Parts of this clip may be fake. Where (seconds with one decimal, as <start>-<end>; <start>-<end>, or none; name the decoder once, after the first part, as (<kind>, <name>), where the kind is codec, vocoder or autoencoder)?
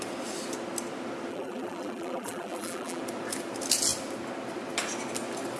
1.3-3.0 (vocoder, BigVGAN v2)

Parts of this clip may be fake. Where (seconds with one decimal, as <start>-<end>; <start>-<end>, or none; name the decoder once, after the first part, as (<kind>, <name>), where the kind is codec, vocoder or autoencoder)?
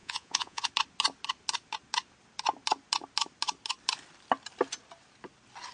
0.0-0.7 (vocoder, Vocos)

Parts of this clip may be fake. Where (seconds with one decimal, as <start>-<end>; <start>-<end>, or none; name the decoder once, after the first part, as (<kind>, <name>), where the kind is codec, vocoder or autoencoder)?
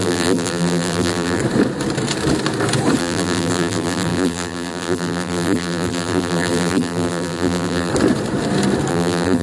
0.0-1.4 (vocoder, BigVGAN v2); 3.0-7.9; 8.9-9.4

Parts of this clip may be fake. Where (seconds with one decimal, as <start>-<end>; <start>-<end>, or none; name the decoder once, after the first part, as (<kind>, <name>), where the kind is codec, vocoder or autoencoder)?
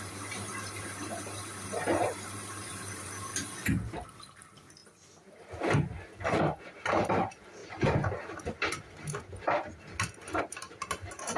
0.0-3.3 (vocoder, BigVGAN v2); 4.1-4.8; 6.6-7.6; 10.4-11.4